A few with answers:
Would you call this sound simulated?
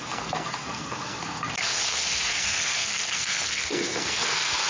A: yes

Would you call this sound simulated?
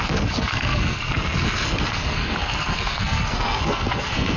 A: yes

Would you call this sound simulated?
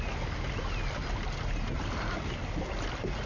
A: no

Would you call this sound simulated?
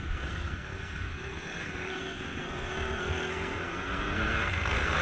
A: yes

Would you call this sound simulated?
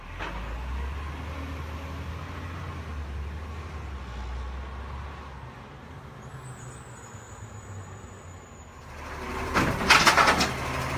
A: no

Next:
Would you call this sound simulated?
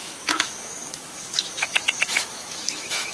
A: yes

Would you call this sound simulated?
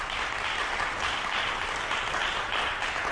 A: no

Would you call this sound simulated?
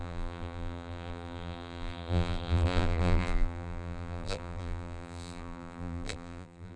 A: yes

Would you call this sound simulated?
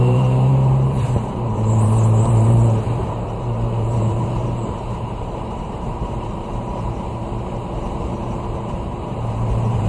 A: yes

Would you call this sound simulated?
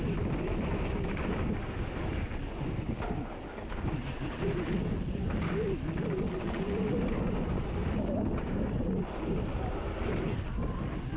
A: no